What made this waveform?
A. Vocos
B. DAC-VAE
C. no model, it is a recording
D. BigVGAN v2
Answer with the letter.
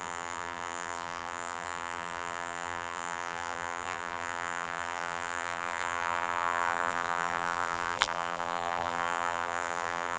D